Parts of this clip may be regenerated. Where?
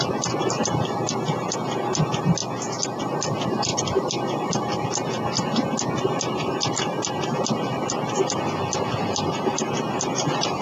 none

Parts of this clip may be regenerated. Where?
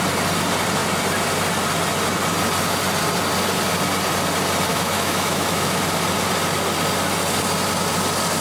4.7-5.8 (autoencoder, DAC-VAE)